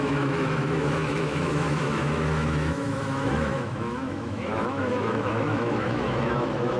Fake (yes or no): yes